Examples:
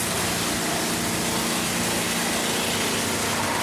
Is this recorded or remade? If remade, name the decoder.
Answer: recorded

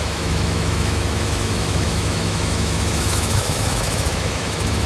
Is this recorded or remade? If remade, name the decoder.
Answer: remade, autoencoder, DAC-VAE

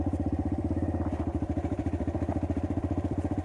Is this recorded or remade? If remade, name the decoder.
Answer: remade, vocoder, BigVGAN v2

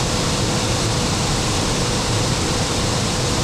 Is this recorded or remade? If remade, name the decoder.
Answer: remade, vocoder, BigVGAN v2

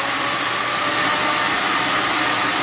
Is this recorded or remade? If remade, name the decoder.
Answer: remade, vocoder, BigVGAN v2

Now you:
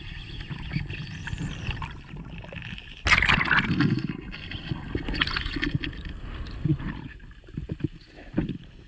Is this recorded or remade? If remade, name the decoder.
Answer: recorded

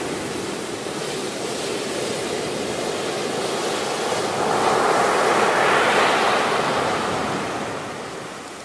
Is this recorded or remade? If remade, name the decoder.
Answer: recorded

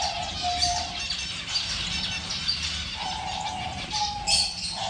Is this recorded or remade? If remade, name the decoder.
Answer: recorded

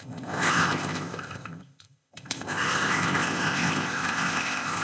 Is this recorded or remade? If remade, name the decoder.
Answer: remade, codec, ZipCodec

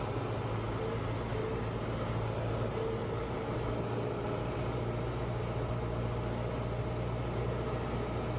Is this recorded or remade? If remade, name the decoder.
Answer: recorded